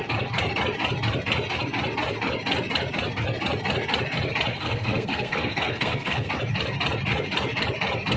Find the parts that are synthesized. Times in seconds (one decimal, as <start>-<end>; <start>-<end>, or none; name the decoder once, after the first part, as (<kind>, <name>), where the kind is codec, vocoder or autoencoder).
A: 4.5-6.3 (codec, SNAC)